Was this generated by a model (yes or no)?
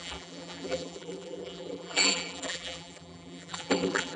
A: yes